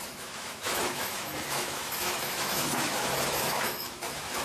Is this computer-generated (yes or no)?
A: yes